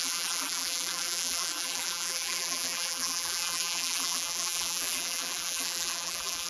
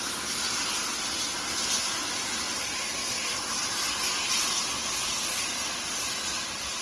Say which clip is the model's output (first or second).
first